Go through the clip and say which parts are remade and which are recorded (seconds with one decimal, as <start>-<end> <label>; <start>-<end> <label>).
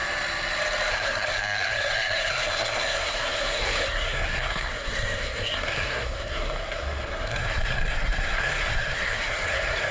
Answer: 0.0-0.9 recorded; 0.9-9.9 remade